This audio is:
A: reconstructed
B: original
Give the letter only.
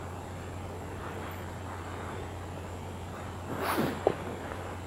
A